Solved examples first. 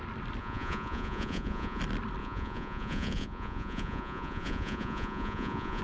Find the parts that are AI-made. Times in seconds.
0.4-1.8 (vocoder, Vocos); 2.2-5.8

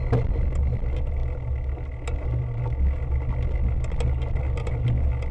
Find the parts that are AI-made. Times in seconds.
none

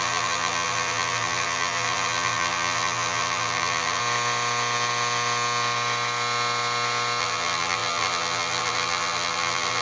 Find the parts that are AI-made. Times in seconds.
0.0-4.0 (vocoder, BigVGAN v2); 7.2-9.8

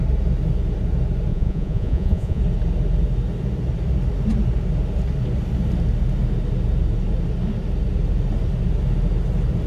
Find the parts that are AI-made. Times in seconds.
1.3-2.4 (vocoder, Vocos)